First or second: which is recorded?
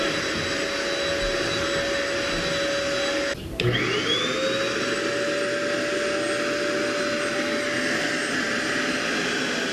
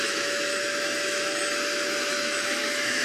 first